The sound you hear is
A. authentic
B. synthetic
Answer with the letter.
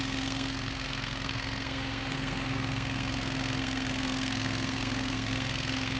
B